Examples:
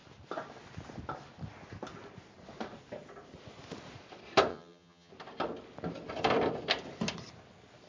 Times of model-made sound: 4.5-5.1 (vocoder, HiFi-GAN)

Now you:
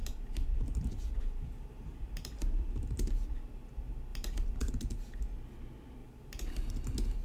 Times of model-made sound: 0.0-3.3 (vocoder, BigVGAN v2); 4.1-4.7; 6.0-6.7

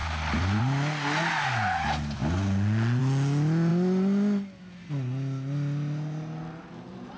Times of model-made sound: none

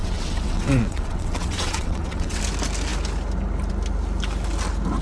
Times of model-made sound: 0.0-2.4 (vocoder, WaveNeXt)

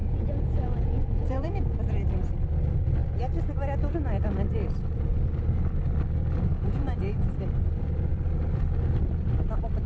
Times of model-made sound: 0.0-1.8 (vocoder, Vocos); 6.5-7.3

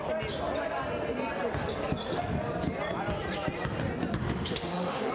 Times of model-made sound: 4.2-5.1 (autoencoder, DAC-VAE)

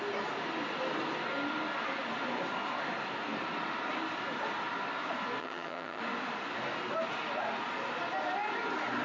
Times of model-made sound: 5.4-6.0 (vocoder, HiFi-GAN)